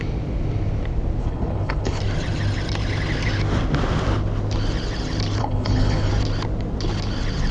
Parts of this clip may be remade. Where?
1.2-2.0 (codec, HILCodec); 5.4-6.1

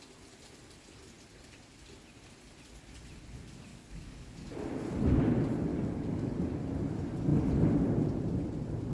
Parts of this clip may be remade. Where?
3.7-4.5 (codec, DAC); 5.7-6.5